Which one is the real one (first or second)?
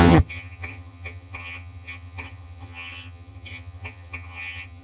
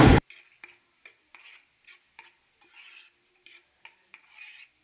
second